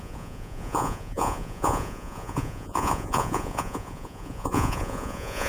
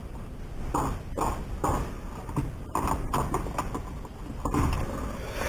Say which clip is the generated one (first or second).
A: first